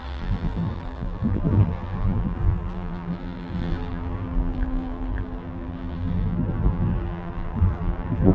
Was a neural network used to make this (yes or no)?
yes